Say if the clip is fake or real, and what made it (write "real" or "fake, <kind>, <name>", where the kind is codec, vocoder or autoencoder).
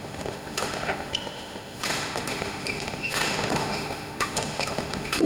fake, autoencoder, DAC-VAE